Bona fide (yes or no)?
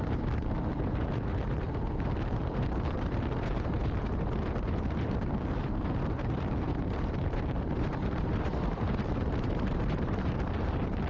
no